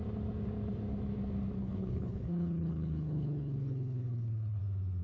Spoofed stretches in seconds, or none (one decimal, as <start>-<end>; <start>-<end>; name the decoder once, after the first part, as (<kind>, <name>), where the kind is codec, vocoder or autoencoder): 1.6-4.6 (codec, HILCodec)